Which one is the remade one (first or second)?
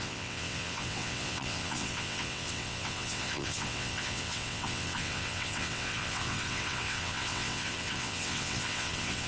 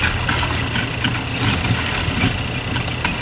first